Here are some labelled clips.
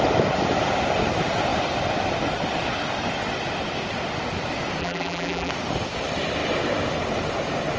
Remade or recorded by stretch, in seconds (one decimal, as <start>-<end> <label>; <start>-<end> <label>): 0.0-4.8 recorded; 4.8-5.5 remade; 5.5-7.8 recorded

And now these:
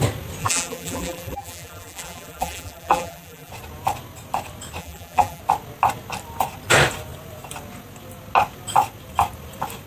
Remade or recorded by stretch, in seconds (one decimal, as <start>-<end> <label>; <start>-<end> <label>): 0.0-0.4 recorded; 0.4-3.5 remade; 3.5-4.8 recorded; 4.8-5.4 remade; 5.4-9.9 recorded

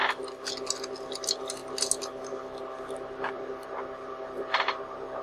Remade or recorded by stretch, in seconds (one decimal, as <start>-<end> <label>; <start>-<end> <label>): 0.0-5.2 recorded

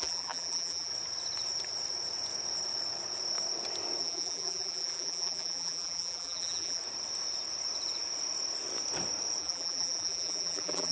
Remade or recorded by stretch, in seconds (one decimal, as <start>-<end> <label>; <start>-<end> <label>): 0.0-0.9 remade; 0.9-4.0 recorded; 4.0-6.8 remade; 6.8-9.4 recorded; 9.4-10.9 remade